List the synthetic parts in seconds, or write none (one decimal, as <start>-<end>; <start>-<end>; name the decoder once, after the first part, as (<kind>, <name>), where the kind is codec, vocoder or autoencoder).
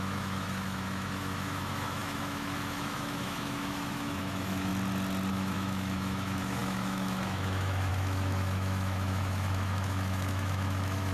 0.0-4.7 (autoencoder, DAC-VAE); 5.3-11.1